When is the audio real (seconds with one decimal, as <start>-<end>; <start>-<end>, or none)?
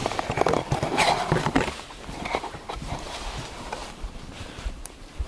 3.2-3.8